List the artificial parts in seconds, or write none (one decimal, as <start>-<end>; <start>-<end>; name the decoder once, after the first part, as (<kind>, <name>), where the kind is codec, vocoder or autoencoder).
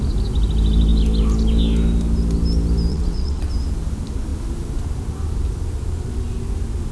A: 2.9-3.5 (vocoder, WaveNeXt)